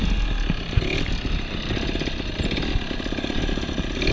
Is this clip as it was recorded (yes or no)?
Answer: yes